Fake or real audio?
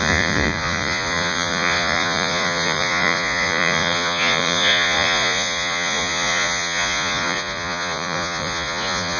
fake